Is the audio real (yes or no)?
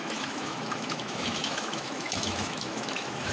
no